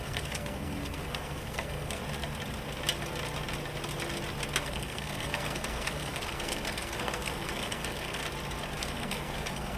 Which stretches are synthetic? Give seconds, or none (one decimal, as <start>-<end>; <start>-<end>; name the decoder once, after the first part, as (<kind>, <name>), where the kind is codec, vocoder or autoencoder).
0.0-2.0 (codec, SNAC); 4.6-8.2; 8.8-9.8